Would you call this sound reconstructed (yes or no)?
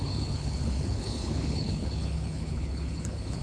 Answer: yes